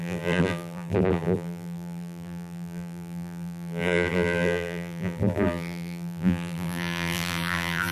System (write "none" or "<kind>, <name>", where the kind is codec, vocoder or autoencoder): vocoder, BigVGAN v2